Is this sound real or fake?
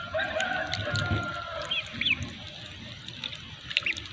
real